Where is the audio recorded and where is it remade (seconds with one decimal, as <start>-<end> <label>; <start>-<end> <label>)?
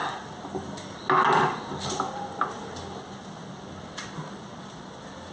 0.0-5.3 recorded